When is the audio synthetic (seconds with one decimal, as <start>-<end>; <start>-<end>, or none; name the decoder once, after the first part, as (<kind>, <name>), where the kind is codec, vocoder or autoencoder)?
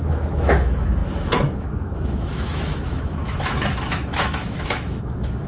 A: 0.0-5.5 (autoencoder, DAC-VAE)